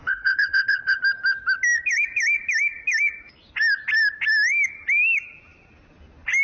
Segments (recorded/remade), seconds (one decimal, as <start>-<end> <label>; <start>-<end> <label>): 0.0-1.0 remade; 1.0-6.4 recorded